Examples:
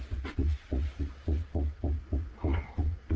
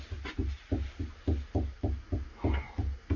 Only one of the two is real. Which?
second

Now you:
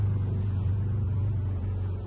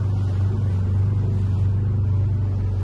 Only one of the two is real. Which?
second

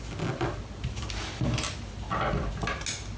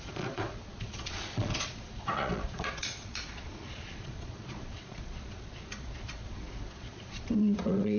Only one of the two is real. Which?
first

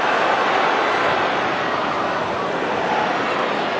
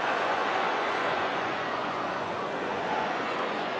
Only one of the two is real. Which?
first